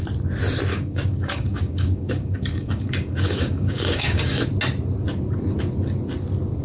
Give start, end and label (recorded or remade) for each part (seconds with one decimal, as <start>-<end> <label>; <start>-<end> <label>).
0.0-0.7 recorded; 0.7-4.4 remade; 4.4-6.6 recorded